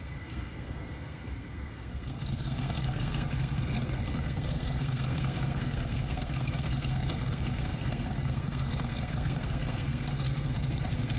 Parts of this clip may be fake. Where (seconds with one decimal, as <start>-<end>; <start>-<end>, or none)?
0.0-11.2